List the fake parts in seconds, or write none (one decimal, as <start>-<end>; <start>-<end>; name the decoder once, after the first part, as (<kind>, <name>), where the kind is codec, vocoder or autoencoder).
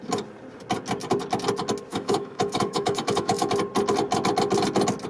1.9-3.5 (autoencoder, DAC-VAE)